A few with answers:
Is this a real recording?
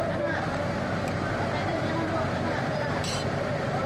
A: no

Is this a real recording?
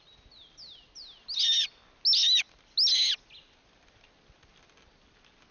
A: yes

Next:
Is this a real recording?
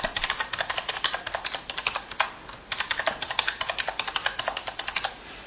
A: yes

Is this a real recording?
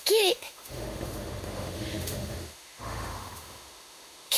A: no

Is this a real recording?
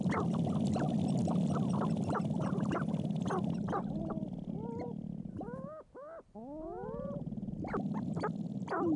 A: yes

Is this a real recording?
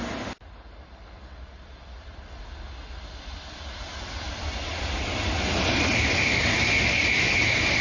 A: yes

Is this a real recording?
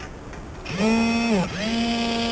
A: yes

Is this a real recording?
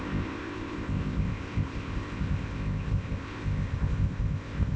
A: no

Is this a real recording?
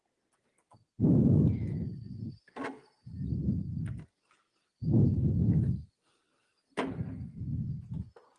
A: yes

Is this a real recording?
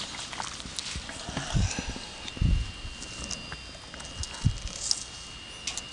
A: yes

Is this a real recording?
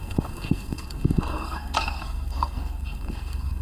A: no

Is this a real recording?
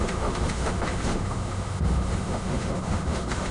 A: no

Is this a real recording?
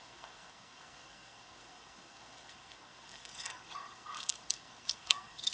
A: no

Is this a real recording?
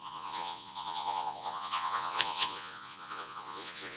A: no